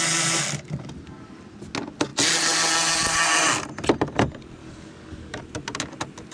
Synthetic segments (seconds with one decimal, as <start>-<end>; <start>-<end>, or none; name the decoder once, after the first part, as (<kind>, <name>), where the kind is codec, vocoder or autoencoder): 4.6-5.4 (codec, DAC)